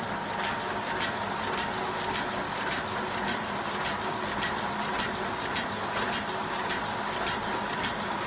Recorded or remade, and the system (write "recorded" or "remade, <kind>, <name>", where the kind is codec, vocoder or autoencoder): recorded